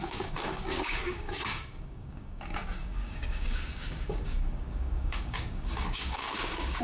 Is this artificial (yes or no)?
yes